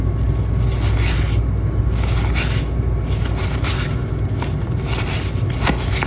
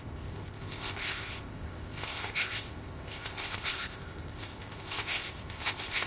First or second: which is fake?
second